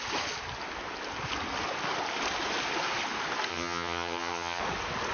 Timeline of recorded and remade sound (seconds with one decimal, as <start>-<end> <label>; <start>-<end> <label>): 0.0-3.5 recorded; 3.5-4.6 remade; 4.6-5.1 recorded